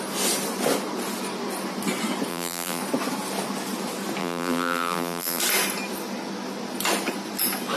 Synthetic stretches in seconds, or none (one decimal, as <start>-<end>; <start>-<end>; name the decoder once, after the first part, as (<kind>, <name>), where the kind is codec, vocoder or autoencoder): 2.3-2.8 (vocoder, BigVGAN v2); 4.2-5.4